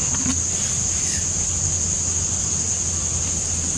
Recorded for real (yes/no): yes